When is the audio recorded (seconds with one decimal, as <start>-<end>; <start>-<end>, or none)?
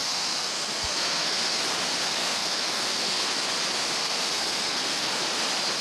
1.6-2.0; 3.3-4.0; 5.2-5.8